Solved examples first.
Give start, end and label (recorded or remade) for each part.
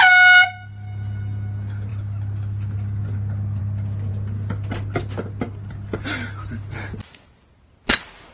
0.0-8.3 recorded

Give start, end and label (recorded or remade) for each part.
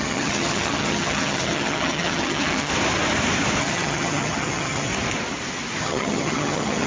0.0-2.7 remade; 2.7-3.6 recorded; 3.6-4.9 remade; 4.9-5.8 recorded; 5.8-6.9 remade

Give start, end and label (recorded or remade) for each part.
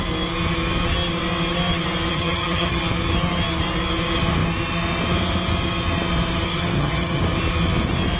0.0-2.1 recorded; 2.1-2.8 remade; 2.8-6.5 recorded; 6.5-7.2 remade; 7.2-8.2 recorded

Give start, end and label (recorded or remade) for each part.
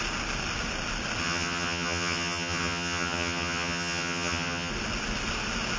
0.0-1.2 recorded; 1.2-4.7 remade; 4.7-5.8 recorded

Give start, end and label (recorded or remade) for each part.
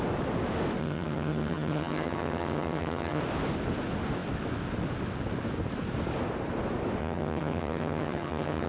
0.0-0.8 recorded; 0.8-3.2 remade; 3.2-7.0 recorded; 7.0-8.7 remade